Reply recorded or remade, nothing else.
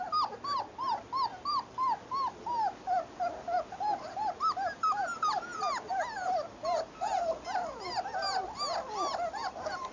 recorded